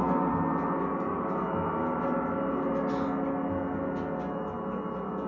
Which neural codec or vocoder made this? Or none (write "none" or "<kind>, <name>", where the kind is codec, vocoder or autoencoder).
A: none